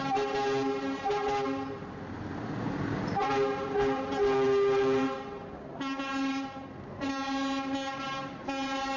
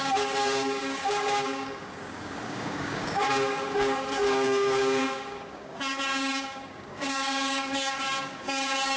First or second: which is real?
first